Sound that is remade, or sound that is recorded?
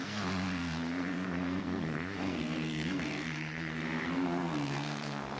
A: remade